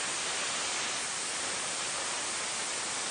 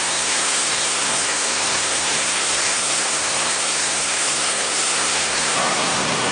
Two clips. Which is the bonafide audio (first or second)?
first